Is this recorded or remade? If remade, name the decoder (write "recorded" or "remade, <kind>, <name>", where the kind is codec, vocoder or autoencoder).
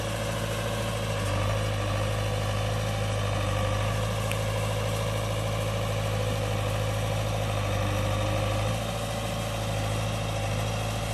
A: recorded